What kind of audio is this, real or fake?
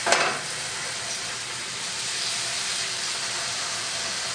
fake